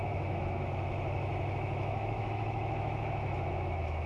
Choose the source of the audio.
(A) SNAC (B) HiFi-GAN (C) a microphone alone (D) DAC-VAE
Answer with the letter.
D